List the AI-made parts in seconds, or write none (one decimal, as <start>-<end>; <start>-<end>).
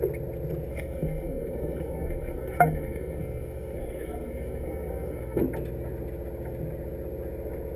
0.7-5.4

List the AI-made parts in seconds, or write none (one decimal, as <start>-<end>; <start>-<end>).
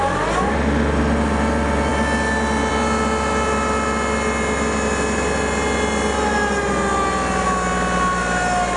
none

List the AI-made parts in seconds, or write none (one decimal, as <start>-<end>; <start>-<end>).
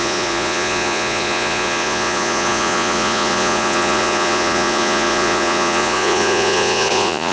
0.0-7.3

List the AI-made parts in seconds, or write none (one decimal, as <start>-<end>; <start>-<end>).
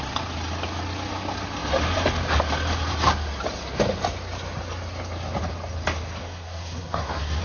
6.2-7.4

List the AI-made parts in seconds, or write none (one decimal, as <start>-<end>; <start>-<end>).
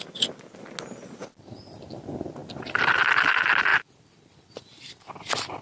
none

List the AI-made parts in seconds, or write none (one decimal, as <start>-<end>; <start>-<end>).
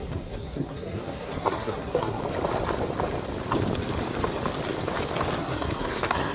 0.0-2.2; 5.4-6.3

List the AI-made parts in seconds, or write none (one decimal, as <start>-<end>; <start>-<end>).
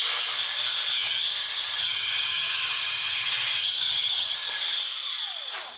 1.3-4.5